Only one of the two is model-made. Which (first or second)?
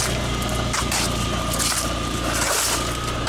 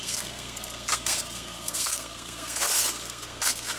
second